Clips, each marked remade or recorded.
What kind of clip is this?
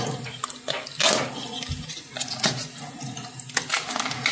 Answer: recorded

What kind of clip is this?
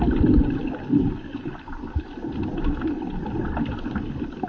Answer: recorded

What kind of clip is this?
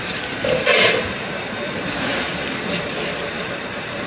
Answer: remade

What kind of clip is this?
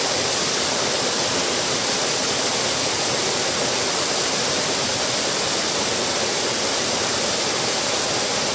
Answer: recorded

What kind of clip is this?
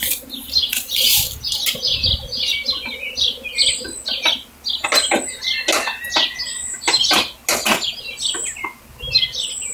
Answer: recorded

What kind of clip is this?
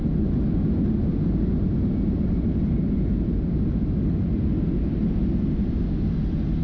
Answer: recorded